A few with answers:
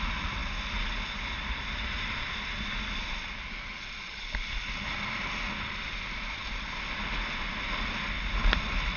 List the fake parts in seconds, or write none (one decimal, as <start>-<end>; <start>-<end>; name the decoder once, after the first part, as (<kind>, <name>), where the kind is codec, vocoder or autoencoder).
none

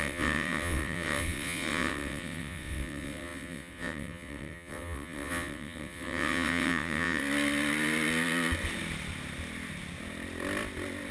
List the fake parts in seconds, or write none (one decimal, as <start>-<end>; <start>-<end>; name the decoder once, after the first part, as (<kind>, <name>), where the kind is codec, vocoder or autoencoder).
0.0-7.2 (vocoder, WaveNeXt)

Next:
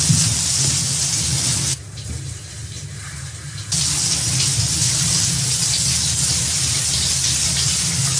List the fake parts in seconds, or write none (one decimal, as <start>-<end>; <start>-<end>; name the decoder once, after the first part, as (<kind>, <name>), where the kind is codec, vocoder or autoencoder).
none

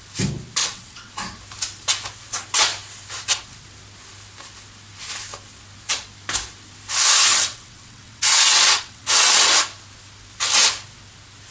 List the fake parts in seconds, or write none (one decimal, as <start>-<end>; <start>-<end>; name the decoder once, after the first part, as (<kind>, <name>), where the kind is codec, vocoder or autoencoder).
0.6-1.1 (vocoder, WaveNeXt); 7.3-9.5